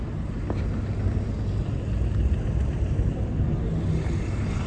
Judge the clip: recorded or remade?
recorded